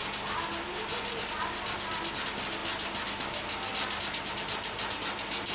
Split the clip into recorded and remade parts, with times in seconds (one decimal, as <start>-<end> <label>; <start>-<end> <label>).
0.0-5.5 recorded